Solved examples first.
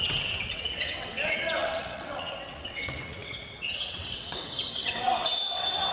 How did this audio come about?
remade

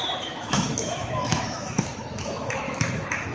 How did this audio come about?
remade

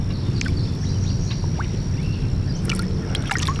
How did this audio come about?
recorded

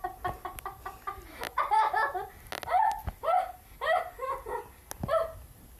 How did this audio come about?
recorded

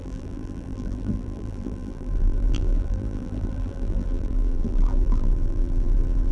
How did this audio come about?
remade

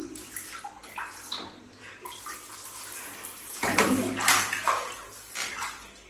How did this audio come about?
recorded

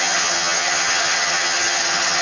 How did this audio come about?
remade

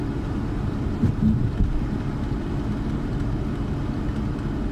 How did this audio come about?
recorded